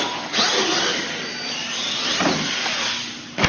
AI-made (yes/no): no